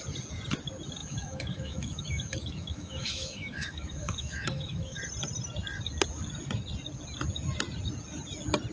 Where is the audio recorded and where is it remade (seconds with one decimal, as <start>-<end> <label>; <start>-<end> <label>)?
0.0-1.0 recorded; 1.0-5.0 remade; 5.0-8.7 recorded

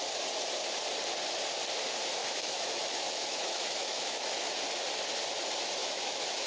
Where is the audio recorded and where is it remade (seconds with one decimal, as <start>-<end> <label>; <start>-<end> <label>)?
0.0-2.2 recorded; 2.2-4.5 remade; 4.5-5.8 recorded; 5.8-6.5 remade